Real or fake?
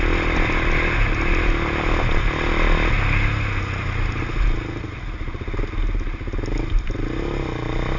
real